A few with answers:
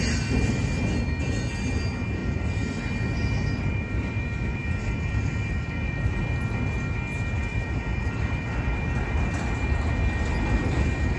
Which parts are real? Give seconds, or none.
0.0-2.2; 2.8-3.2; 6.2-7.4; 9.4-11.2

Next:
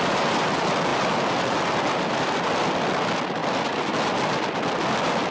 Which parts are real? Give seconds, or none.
0.0-5.3

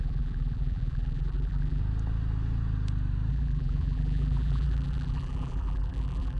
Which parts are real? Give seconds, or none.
1.8-3.3

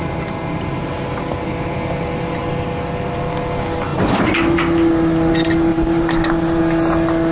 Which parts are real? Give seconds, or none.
0.0-5.7; 6.6-7.3

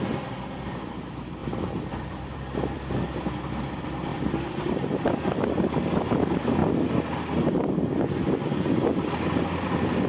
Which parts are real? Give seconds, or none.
6.6-9.4

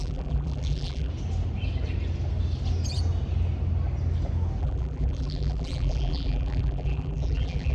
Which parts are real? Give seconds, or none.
1.1-4.6

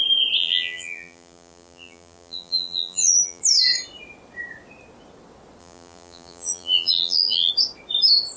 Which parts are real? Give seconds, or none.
0.0-0.4; 3.4-5.6; 7.5-8.4

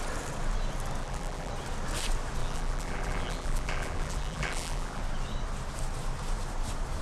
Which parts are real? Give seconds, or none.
0.0-1.0; 1.5-2.4; 5.0-7.0